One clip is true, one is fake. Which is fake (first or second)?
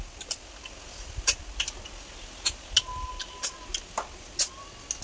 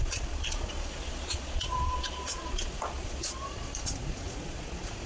second